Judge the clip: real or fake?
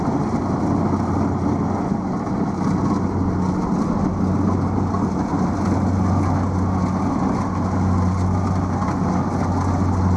real